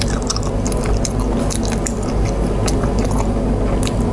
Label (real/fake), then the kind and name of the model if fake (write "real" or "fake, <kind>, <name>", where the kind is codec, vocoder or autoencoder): real